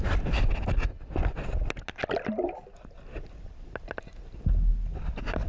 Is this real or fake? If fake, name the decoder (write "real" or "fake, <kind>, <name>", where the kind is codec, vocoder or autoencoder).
real